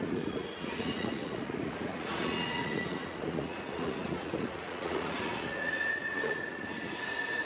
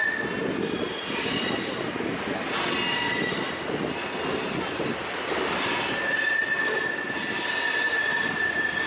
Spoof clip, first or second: first